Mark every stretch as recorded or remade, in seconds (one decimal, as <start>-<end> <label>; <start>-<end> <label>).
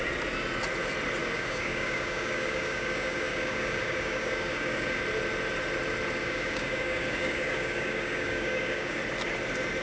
0.0-1.2 recorded; 1.2-5.0 remade; 5.0-6.2 recorded; 6.2-9.0 remade; 9.0-9.8 recorded